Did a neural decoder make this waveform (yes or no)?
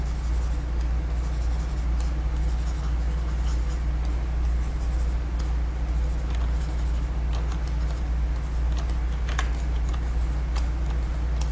no